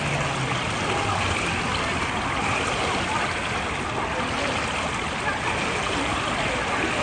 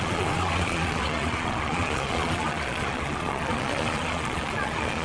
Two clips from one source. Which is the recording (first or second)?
first